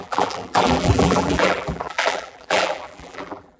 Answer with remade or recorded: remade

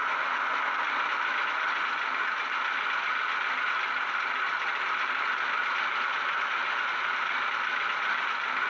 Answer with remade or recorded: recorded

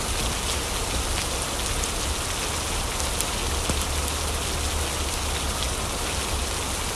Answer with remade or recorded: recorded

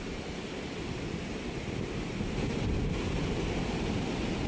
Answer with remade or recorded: recorded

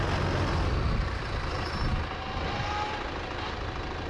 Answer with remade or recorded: recorded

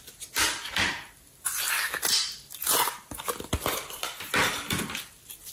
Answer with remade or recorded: recorded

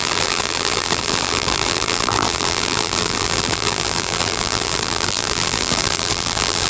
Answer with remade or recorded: remade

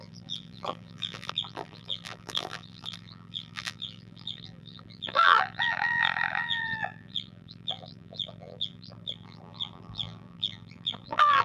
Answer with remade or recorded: remade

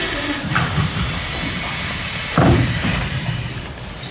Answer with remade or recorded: remade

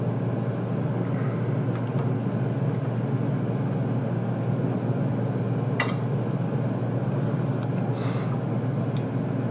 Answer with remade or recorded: recorded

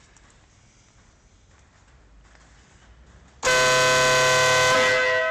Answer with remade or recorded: recorded